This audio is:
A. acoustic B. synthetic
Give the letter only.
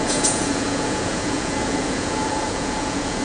B